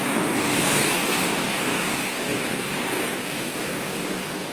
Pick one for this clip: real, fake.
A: fake